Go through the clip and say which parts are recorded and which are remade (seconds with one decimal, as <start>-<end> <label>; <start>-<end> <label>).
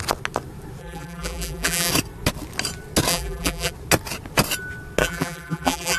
0.0-0.8 recorded; 0.8-1.9 remade; 1.9-3.1 recorded; 3.1-3.7 remade; 3.7-5.0 recorded; 5.0-6.0 remade